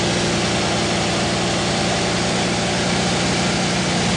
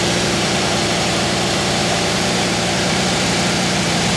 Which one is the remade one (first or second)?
second